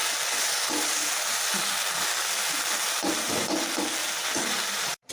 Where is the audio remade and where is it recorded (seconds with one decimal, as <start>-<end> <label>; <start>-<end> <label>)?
0.0-2.8 recorded; 2.8-3.5 remade; 3.5-4.0 recorded; 4.0-5.1 remade